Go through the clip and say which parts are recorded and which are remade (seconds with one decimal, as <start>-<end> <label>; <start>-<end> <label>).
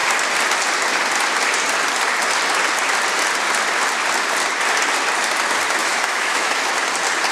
0.0-5.8 recorded; 5.8-6.7 remade; 6.7-7.3 recorded